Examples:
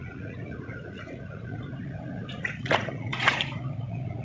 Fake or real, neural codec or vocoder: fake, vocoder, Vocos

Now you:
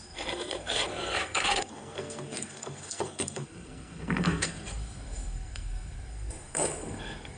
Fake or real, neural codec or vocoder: fake, codec, SNAC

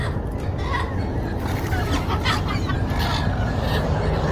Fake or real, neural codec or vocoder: real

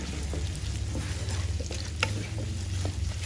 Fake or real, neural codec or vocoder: real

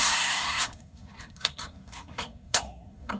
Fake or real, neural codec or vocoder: fake, codec, SNAC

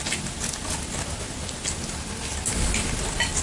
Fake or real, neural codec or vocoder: real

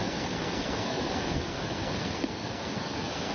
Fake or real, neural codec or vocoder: fake, codec, SNAC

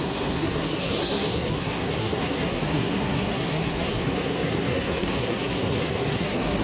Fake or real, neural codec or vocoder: fake, codec, SNAC